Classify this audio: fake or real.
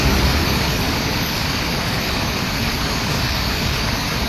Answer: fake